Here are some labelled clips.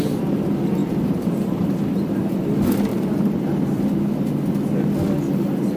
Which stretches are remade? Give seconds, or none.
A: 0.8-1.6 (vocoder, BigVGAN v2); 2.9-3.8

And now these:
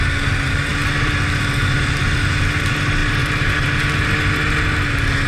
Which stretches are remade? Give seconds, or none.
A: none

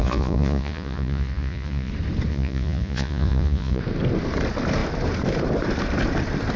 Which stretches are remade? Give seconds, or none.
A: 0.0-1.9 (vocoder, Vocos); 2.3-3.8

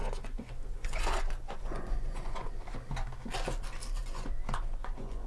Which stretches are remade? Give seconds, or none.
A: 0.0-2.6 (vocoder, Vocos); 4.0-5.3

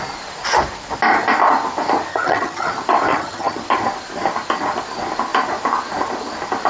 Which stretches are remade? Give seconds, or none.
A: 2.1-2.7 (vocoder, HiFi-GAN); 3.1-3.6

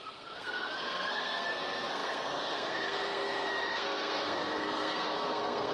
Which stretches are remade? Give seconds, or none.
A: 0.0-5.7 (codec, SNAC)